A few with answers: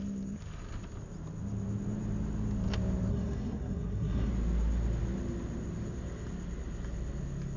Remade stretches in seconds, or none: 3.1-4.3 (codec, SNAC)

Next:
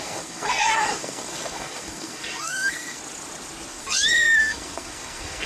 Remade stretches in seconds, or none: 0.0-3.0 (codec, SNAC); 3.7-5.5